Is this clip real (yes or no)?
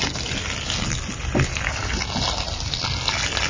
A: yes